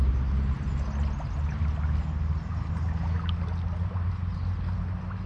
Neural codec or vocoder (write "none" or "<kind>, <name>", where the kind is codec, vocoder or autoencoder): none